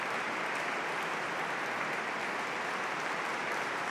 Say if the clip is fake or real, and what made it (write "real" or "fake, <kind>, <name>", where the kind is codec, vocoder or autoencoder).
real